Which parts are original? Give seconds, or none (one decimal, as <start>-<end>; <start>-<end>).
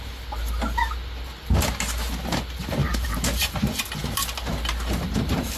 0.0-2.8; 3.5-5.6